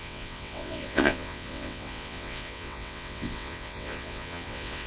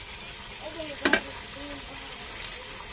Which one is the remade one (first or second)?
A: first